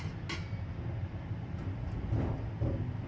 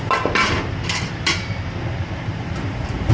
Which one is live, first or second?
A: first